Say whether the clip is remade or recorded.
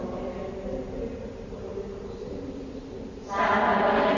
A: recorded